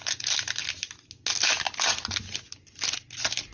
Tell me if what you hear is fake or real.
real